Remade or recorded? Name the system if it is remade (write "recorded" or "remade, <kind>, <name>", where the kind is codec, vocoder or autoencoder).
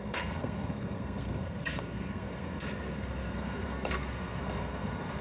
remade, codec, SNAC